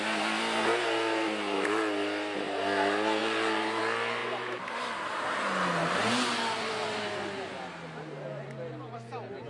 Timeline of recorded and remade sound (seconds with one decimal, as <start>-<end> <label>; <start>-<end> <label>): 0.0-3.2 recorded; 3.2-3.8 remade; 3.8-4.2 recorded; 4.2-4.7 remade; 4.7-5.8 recorded; 5.8-6.7 remade; 6.7-9.5 recorded